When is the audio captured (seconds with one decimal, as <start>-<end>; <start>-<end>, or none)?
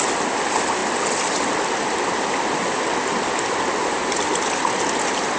0.0-5.4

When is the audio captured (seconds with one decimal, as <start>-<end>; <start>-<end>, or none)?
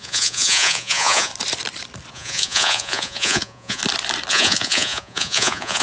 1.3-2.1; 3.8-4.3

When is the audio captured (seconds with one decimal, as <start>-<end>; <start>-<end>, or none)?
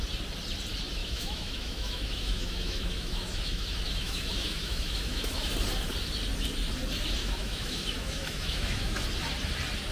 0.0-1.0; 5.5-7.2; 9.0-9.9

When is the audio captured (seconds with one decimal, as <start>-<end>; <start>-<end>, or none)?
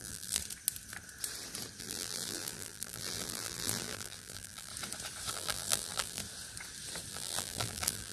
0.4-1.8; 4.7-5.3; 6.2-7.1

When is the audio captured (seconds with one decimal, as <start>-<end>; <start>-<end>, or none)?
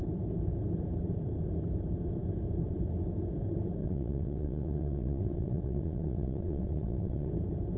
0.0-3.8; 7.3-7.8